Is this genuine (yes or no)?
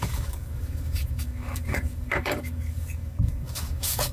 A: no